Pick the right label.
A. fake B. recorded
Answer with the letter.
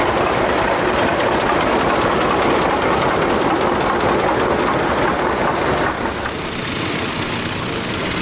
B